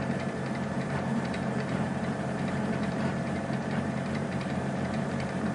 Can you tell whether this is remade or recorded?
remade